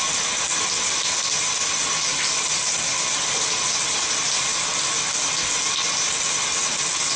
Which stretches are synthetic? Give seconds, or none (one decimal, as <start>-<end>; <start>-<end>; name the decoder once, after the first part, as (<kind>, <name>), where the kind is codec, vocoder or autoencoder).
none